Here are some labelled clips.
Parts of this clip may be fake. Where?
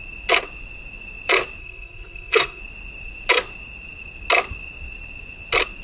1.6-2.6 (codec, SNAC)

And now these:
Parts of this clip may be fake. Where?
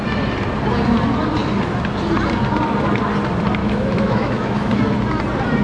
3.6-4.8 (autoencoder, DAC-VAE)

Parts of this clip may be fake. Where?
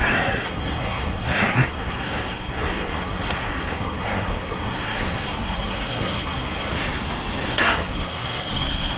0.0-6.7 (codec, SNAC); 7.5-9.0